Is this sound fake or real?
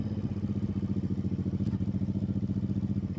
real